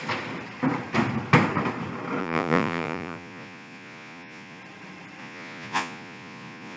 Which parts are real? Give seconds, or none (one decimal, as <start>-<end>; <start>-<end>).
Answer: 0.0-2.2; 4.6-5.2